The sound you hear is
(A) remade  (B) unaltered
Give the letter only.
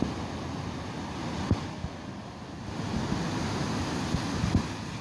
B